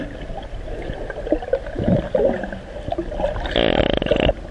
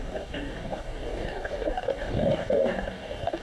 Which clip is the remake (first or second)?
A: second